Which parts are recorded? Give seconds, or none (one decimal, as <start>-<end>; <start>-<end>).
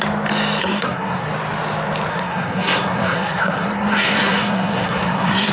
0.0-0.6; 1.3-2.1